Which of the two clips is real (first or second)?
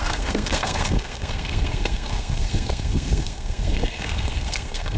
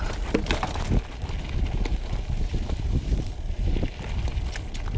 second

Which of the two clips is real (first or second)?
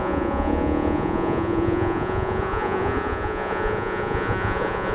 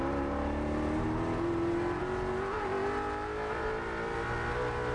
second